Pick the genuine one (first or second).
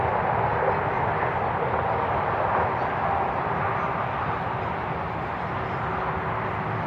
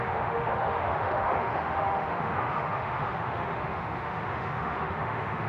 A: first